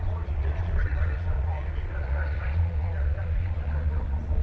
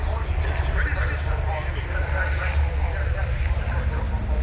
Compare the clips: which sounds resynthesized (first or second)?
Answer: first